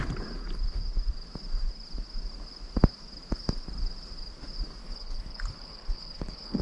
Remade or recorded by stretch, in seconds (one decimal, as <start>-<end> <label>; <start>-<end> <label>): 0.0-4.8 recorded; 4.8-6.6 remade